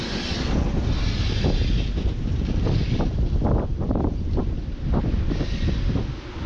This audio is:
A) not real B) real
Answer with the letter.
B